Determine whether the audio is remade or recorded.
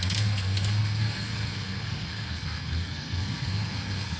remade